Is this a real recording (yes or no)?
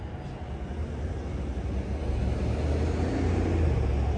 yes